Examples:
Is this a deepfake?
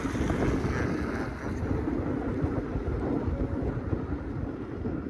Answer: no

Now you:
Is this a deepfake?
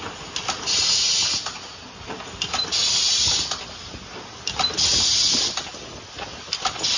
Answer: no